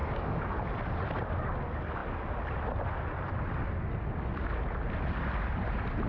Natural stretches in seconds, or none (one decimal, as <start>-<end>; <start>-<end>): 0.5-6.1